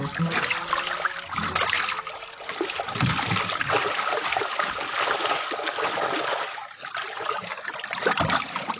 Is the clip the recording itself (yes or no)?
yes